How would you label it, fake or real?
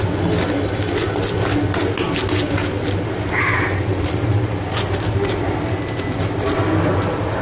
real